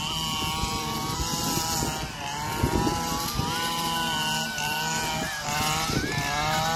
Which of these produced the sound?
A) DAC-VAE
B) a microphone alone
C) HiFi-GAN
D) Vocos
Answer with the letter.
B